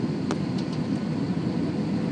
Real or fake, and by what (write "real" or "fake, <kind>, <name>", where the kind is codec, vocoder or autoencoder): real